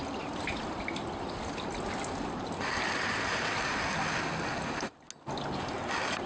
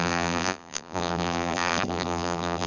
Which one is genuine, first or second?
first